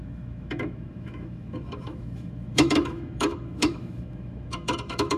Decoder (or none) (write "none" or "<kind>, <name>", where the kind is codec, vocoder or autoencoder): autoencoder, DAC-VAE